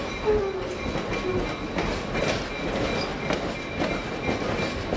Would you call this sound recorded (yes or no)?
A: yes